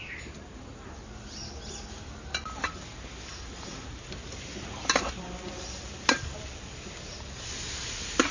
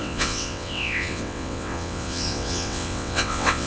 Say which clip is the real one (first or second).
first